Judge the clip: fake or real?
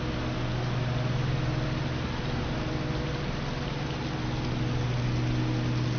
real